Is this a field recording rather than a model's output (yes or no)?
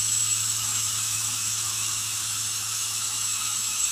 no